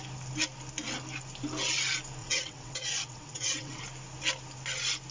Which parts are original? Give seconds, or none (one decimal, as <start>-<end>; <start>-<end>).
0.0-2.2; 3.8-5.1